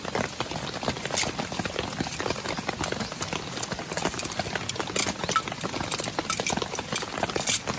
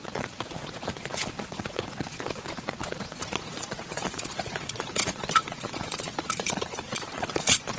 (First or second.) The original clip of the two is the first